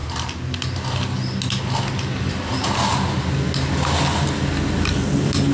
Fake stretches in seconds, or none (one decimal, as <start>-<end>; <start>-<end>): none